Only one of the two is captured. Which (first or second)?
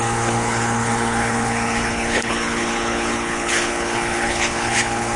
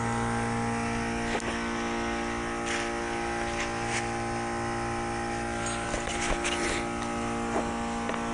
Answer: second